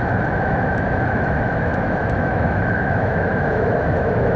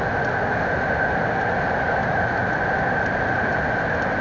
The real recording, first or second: second